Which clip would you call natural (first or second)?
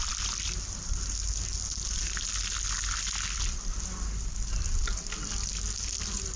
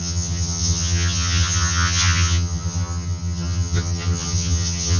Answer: first